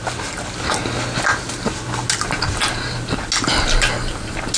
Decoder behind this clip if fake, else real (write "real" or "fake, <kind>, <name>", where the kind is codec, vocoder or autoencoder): real